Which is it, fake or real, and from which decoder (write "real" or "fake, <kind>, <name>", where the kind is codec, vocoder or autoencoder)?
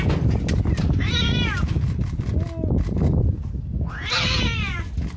real